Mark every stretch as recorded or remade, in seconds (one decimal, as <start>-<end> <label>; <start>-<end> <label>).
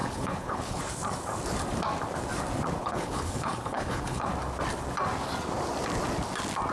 0.0-0.8 remade; 0.8-2.8 recorded; 2.8-4.3 remade; 4.3-6.7 recorded